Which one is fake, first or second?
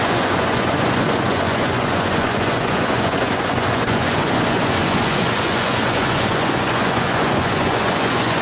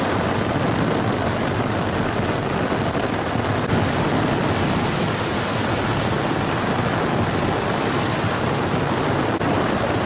first